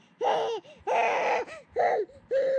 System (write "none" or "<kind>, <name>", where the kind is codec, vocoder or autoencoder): none